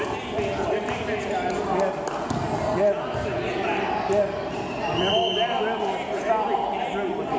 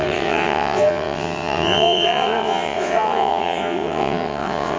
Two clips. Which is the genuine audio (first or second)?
first